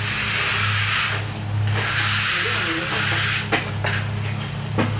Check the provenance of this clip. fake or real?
real